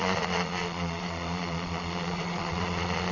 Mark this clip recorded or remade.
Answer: remade